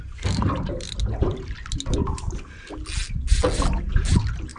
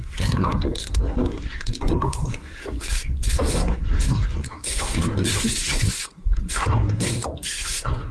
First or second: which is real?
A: first